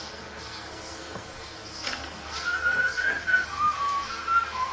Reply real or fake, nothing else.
fake